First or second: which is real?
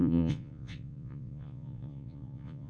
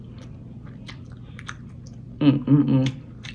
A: second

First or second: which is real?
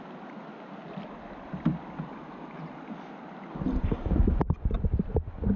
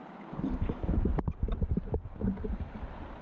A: first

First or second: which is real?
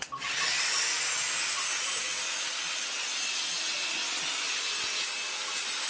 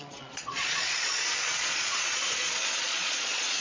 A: first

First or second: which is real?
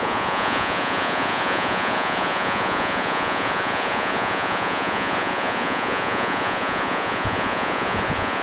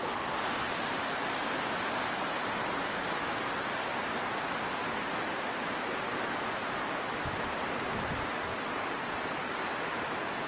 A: second